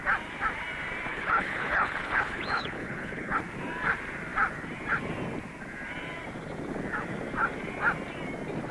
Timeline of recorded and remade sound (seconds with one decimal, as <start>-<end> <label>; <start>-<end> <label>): 0.0-1.1 recorded; 1.1-3.4 remade; 3.4-8.7 recorded